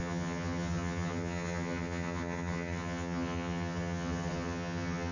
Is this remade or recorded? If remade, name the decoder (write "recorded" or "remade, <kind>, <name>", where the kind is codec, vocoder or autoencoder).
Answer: remade, vocoder, HiFi-GAN